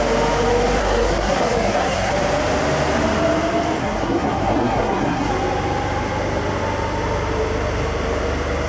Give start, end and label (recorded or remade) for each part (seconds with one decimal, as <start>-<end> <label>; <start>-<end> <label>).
0.0-0.8 recorded; 0.8-2.1 remade; 2.1-3.8 recorded; 3.8-5.3 remade; 5.3-8.7 recorded